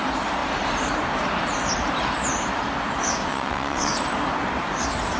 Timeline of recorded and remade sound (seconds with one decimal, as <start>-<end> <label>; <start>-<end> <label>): 0.0-3.3 recorded; 3.3-3.9 remade; 3.9-5.2 recorded